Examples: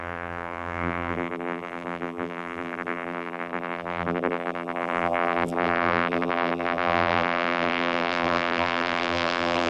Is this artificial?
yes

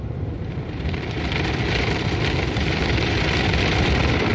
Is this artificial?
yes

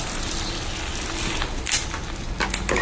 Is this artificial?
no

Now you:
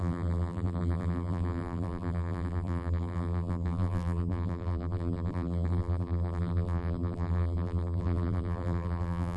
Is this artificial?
yes